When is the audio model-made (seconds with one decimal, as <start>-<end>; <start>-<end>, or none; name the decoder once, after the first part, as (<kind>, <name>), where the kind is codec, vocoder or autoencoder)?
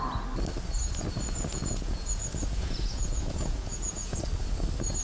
1.5-4.2 (vocoder, Vocos)